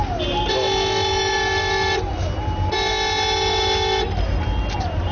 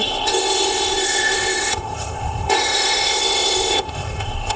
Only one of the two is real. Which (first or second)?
first